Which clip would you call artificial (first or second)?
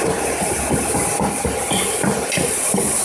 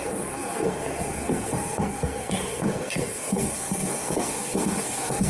second